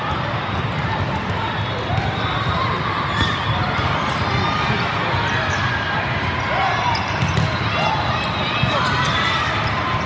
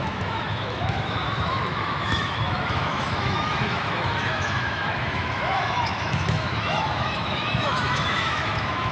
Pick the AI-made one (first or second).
second